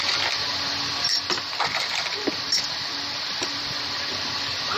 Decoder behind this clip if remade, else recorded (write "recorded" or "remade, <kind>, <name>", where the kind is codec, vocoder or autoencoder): recorded